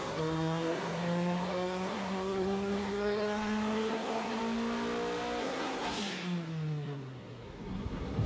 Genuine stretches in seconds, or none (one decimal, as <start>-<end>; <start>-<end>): 4.4-5.4